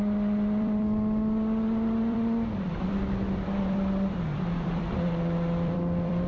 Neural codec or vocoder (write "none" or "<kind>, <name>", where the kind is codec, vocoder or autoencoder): vocoder, BigVGAN v2